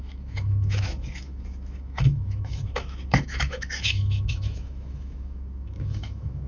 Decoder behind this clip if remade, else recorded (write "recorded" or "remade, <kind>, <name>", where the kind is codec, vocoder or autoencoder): remade, autoencoder, DAC-VAE